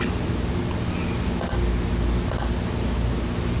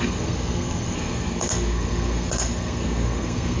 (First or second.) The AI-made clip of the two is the second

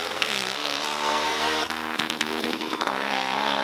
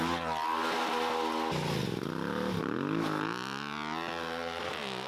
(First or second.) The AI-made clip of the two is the first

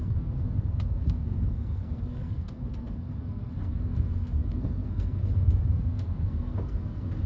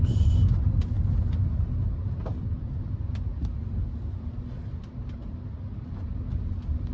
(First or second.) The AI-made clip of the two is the first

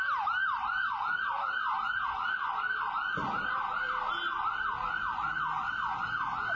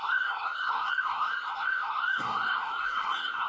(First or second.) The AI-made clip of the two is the second